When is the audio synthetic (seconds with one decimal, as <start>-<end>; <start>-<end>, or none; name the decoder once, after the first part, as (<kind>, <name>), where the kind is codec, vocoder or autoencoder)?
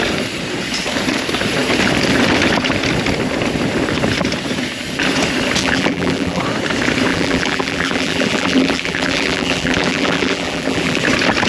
5.6-6.4 (vocoder, BigVGAN v2); 7.1-11.0